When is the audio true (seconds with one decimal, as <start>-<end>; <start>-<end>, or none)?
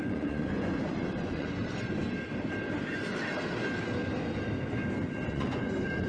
1.6-5.3